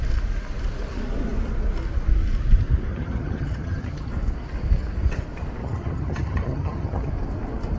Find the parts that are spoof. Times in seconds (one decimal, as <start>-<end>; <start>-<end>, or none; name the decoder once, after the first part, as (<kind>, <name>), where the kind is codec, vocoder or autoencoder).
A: 2.9-4.1 (vocoder, HiFi-GAN); 5.6-7.1